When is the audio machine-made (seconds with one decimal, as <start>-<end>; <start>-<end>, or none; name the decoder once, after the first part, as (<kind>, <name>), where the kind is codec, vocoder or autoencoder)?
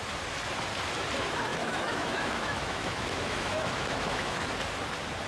1.5-4.5 (autoencoder, DAC-VAE)